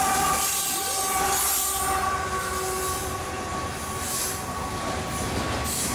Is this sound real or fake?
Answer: real